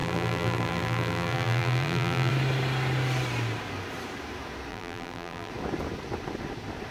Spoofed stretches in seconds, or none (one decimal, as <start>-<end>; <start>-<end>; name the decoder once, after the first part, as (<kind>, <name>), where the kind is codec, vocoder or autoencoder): 0.0-2.3 (vocoder, BigVGAN v2); 4.7-5.5